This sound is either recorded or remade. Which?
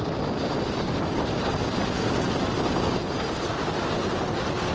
recorded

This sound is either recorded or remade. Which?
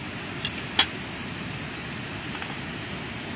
recorded